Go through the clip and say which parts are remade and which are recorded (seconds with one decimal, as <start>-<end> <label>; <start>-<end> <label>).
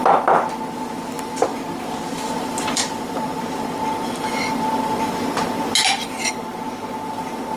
0.0-1.5 recorded; 1.5-5.3 remade; 5.3-7.6 recorded